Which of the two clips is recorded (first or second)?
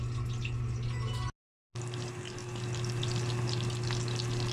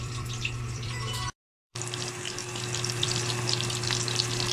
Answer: first